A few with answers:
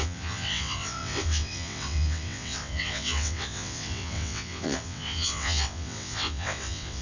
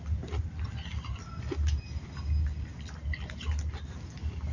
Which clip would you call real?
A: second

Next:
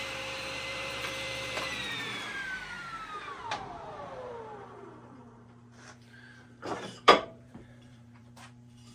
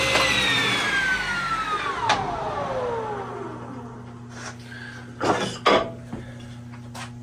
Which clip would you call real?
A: second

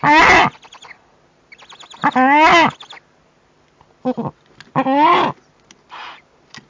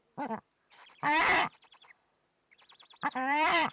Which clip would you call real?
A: first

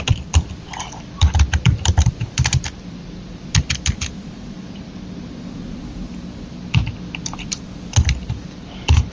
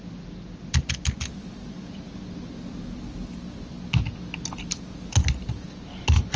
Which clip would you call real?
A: second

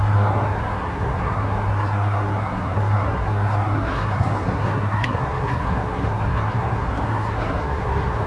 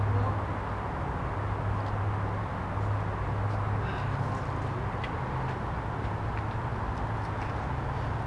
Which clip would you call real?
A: second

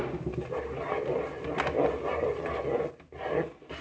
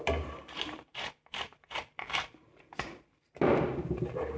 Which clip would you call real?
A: first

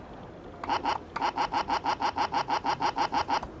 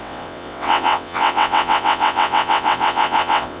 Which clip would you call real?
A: first